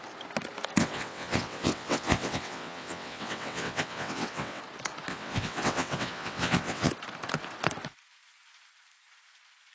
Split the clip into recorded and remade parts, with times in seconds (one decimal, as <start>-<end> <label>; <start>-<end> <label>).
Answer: 0.0-0.8 recorded; 0.8-4.6 remade; 4.6-5.1 recorded; 5.1-6.9 remade; 6.9-9.7 recorded